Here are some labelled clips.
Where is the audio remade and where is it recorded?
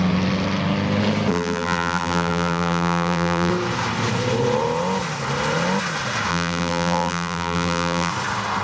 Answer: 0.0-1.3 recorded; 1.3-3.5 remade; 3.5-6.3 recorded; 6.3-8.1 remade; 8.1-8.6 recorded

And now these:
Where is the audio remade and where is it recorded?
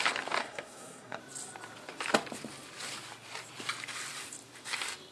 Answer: 0.0-0.4 recorded; 0.4-1.2 remade; 1.2-5.1 recorded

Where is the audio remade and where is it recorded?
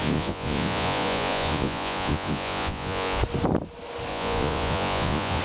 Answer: 0.0-3.2 remade; 3.2-4.1 recorded; 4.1-5.4 remade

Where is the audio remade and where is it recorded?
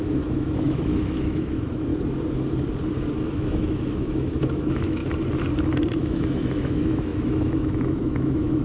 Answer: 0.0-1.9 remade; 1.9-3.3 recorded; 3.3-5.0 remade; 5.0-6.0 recorded; 6.0-8.6 remade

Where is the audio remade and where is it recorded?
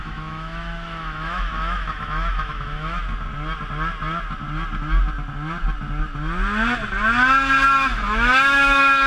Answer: 0.0-3.0 remade; 3.0-7.9 recorded; 7.9-9.1 remade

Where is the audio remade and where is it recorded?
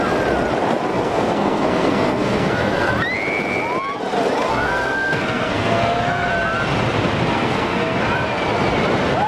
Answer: 0.0-0.9 recorded; 0.9-2.9 remade; 2.9-4.5 recorded; 4.5-6.3 remade; 6.3-7.3 recorded; 7.3-8.0 remade; 8.0-9.3 recorded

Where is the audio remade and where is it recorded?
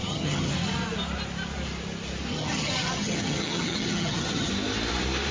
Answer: 0.0-0.5 remade; 0.5-2.3 recorded; 2.3-4.5 remade; 4.5-5.3 recorded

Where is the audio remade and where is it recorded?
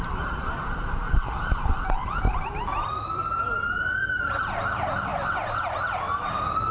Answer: 0.0-6.7 recorded